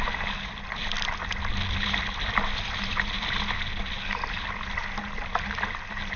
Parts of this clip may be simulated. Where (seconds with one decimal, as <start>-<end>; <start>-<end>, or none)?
none